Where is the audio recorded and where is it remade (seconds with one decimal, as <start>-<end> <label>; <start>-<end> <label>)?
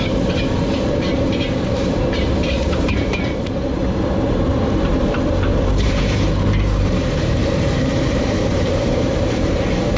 0.0-3.8 remade; 3.8-4.5 recorded; 4.5-10.0 remade